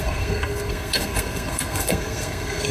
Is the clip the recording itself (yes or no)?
no